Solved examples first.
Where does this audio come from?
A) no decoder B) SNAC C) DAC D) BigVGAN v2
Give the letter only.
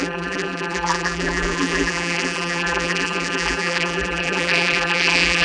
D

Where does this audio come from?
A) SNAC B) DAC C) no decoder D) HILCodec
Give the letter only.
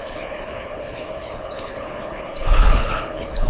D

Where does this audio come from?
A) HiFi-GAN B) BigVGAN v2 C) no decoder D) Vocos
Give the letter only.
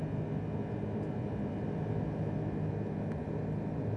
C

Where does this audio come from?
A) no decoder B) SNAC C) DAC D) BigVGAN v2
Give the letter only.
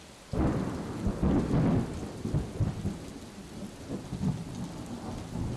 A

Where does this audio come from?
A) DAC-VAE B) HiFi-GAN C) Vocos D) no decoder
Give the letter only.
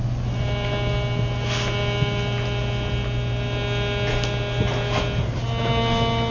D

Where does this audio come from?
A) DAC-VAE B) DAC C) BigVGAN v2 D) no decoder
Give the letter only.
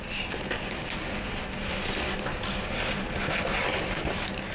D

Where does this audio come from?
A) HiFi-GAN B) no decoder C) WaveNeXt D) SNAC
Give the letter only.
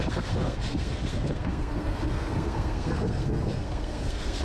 D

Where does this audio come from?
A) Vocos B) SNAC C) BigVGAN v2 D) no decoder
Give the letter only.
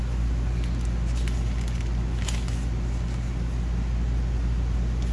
D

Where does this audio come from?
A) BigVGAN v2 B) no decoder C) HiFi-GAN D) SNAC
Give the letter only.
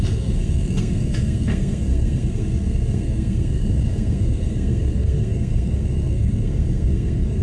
D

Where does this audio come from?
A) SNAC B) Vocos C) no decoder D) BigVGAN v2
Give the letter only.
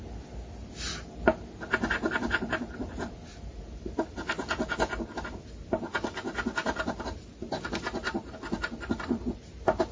C